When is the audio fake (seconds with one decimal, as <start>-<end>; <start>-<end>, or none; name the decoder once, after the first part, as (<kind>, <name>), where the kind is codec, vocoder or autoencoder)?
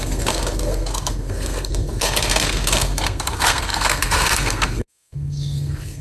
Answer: 0.0-6.0 (codec, SNAC)